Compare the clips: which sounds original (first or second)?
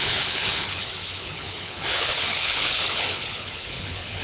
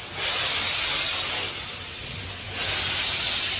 second